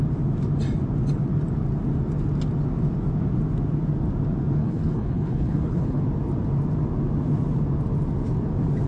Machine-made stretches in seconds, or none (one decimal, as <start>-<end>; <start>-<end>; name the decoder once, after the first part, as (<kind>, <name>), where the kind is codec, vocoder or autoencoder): 4.6-6.0 (codec, HILCodec)

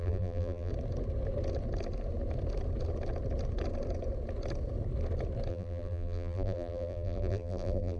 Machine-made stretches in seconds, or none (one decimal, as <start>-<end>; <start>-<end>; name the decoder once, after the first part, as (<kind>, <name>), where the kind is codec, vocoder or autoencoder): 0.0-0.7 (vocoder, BigVGAN v2); 5.5-8.0

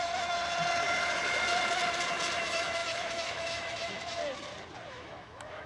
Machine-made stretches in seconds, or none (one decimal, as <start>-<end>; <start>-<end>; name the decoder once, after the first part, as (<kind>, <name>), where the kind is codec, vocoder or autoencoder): 0.0-0.4 (autoencoder, DAC-VAE); 2.4-4.2; 4.9-5.7

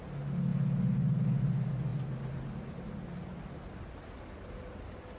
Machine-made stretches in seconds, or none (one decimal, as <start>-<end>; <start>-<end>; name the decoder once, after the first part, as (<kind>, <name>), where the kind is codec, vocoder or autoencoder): none

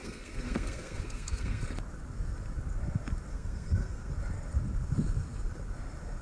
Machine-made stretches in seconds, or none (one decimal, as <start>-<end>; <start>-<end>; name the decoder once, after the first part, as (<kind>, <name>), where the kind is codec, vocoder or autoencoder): 0.0-1.6 (codec, SNAC); 3.3-4.1

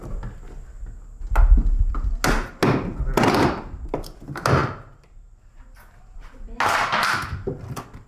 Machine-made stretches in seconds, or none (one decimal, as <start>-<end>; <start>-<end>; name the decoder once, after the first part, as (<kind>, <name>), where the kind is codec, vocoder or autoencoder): none